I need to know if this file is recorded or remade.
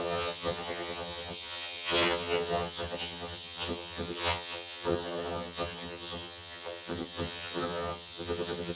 remade